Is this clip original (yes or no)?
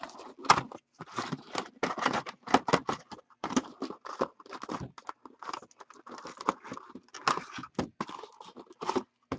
yes